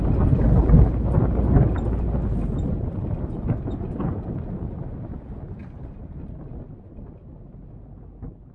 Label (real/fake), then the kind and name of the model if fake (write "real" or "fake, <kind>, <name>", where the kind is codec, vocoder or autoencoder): real